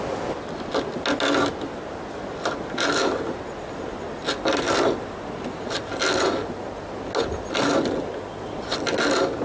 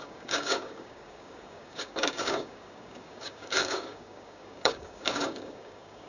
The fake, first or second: second